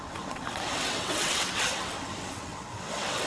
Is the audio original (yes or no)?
no